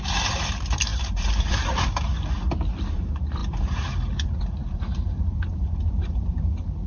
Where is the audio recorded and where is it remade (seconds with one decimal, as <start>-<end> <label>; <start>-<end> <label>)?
0.0-2.1 remade; 2.1-2.8 recorded; 2.8-6.9 remade